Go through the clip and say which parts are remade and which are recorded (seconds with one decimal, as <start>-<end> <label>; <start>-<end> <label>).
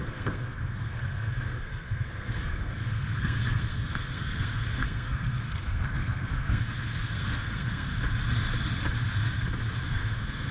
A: 0.0-7.9 remade; 7.9-9.9 recorded; 9.9-10.5 remade